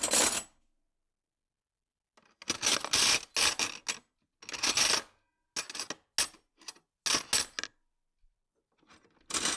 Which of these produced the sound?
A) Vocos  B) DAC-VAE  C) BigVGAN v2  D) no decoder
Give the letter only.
D